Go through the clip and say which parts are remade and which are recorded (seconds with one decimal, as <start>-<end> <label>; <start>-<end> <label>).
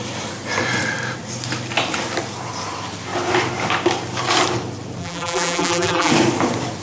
0.0-5.0 recorded; 5.0-6.1 remade; 6.1-6.8 recorded